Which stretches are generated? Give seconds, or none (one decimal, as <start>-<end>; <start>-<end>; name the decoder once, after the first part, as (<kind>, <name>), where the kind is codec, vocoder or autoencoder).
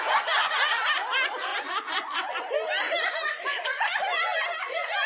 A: none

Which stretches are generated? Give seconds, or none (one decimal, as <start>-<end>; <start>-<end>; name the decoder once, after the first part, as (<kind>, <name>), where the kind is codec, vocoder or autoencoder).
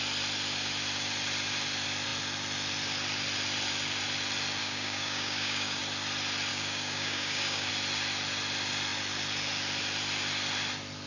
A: 4.6-5.8 (codec, DAC); 6.5-7.7